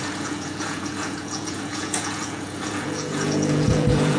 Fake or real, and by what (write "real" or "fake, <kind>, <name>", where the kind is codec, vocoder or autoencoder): fake, vocoder, Vocos